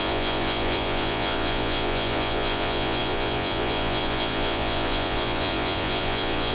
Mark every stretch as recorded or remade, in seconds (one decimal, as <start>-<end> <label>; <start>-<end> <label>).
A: 0.0-6.5 remade